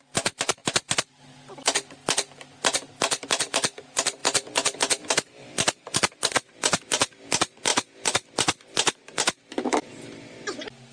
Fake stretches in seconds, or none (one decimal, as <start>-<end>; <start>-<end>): none